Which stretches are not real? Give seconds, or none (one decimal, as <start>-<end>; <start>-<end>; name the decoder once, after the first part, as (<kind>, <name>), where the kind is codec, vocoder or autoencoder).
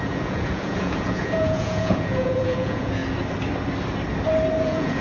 0.0-3.0 (vocoder, Vocos); 4.6-5.0